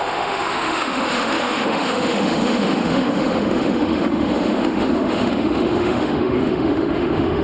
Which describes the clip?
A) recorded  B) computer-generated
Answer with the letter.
B